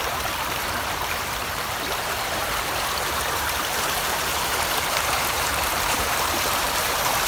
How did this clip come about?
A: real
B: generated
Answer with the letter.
B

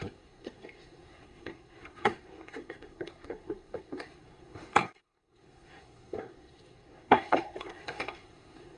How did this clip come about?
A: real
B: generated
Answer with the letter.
B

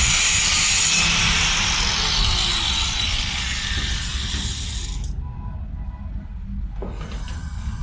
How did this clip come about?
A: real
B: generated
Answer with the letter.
A